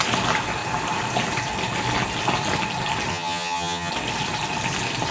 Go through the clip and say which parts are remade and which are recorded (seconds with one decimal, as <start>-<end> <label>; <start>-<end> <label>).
0.0-3.1 recorded; 3.1-3.9 remade; 3.9-5.1 recorded